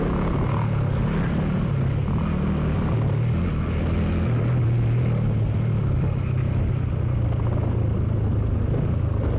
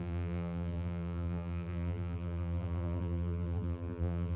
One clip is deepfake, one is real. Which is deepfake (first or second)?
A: second